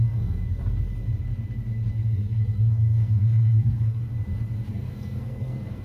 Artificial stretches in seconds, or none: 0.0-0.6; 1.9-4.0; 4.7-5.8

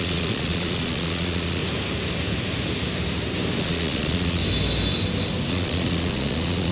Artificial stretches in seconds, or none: 0.0-1.6; 3.6-4.4; 5.5-6.7

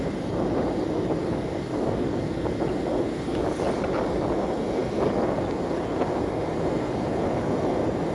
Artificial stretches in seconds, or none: 1.2-2.1

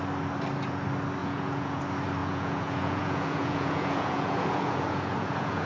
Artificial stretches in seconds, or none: 1.2-1.8; 2.2-5.7

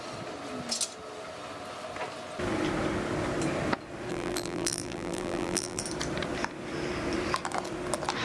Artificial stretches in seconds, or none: 4.1-5.8